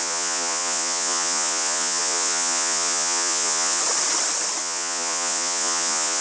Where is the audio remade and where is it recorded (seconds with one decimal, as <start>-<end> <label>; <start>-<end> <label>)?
0.0-3.8 remade; 3.8-4.6 recorded; 4.6-6.2 remade